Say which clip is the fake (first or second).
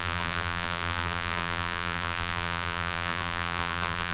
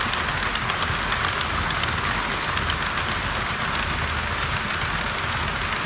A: first